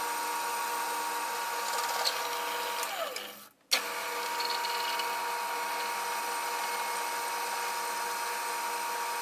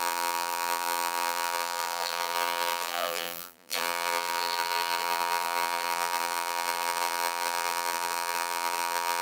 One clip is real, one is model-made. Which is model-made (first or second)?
second